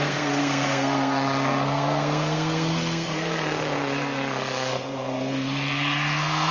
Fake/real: fake